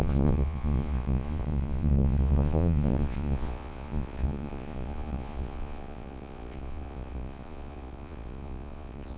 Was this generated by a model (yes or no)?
yes